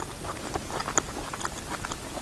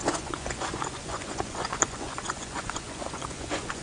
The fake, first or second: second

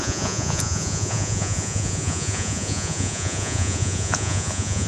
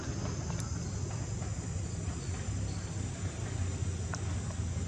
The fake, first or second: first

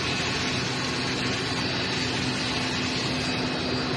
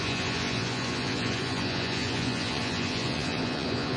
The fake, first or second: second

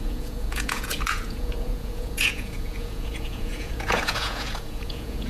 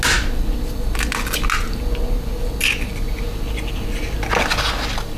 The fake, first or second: first